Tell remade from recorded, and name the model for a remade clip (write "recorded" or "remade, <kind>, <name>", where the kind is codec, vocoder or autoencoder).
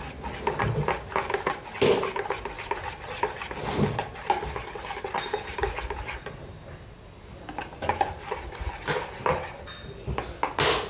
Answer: recorded